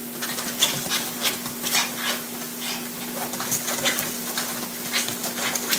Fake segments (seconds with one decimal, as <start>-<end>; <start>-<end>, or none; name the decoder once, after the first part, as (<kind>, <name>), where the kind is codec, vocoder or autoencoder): none